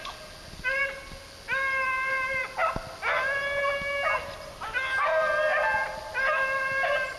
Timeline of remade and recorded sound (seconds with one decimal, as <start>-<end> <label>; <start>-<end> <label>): 0.0-7.2 recorded